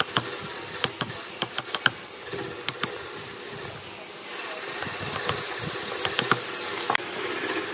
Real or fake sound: real